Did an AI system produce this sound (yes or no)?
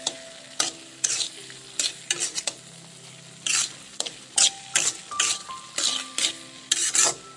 no